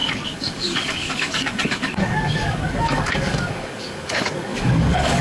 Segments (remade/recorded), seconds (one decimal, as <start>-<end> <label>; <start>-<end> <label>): 0.0-5.2 remade

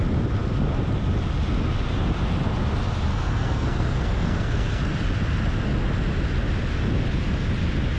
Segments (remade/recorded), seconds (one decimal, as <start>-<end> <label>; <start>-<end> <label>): 0.0-3.1 recorded; 3.1-4.9 remade; 4.9-8.0 recorded

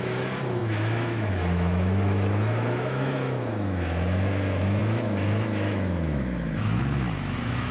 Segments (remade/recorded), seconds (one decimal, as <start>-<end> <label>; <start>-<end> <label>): 0.0-7.7 remade

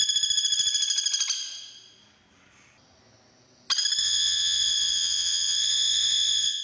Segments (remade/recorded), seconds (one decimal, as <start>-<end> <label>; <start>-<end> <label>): 0.0-4.0 recorded; 4.0-6.6 remade

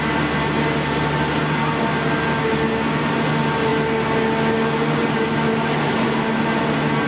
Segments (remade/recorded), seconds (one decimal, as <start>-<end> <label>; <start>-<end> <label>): 0.0-7.1 recorded

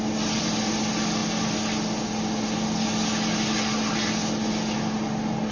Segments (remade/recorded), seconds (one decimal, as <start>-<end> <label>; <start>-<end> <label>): 0.0-5.5 recorded

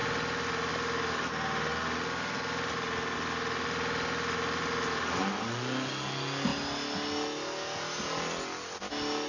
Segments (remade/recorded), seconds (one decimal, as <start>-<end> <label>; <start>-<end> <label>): 0.0-9.3 recorded

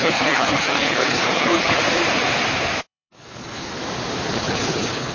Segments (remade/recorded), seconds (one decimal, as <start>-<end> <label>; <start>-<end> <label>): 0.0-1.8 remade; 1.8-2.8 recorded; 2.8-3.7 remade; 3.7-4.3 recorded; 4.3-5.1 remade